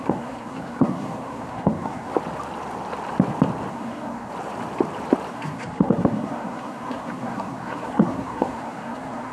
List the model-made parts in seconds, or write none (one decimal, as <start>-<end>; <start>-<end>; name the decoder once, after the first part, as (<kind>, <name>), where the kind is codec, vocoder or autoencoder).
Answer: 0.0-2.1 (codec, SNAC); 3.7-4.3; 5.3-9.3